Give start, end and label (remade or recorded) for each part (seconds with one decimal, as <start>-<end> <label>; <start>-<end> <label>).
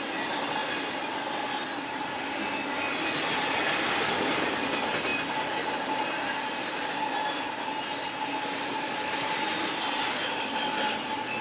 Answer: 0.0-11.4 recorded